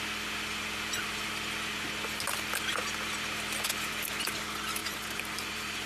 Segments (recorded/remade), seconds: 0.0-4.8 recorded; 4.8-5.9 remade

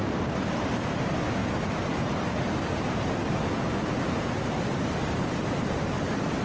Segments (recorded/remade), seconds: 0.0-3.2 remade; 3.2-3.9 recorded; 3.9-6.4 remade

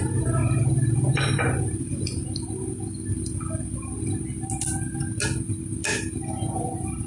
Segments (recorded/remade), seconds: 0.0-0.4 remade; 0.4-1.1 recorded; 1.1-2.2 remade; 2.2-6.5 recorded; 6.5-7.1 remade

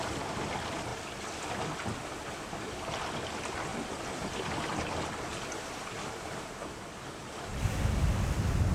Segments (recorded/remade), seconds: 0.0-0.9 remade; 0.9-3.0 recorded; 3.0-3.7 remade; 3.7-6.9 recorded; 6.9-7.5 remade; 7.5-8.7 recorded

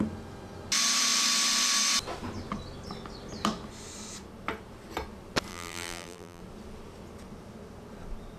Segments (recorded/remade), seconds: 0.0-5.5 recorded; 5.5-6.4 remade; 6.4-8.4 recorded

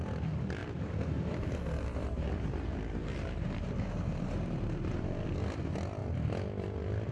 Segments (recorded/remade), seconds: 0.0-0.6 recorded; 0.6-4.9 remade; 4.9-7.1 recorded

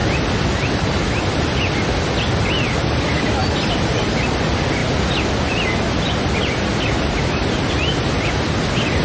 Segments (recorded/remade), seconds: 0.0-9.0 recorded

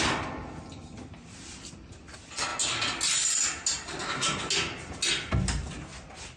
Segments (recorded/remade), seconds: 0.0-6.4 recorded